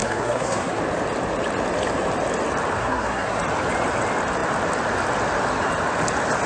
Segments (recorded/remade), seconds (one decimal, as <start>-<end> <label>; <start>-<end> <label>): 0.0-0.8 remade; 0.8-2.8 recorded; 2.8-3.4 remade; 3.4-6.5 recorded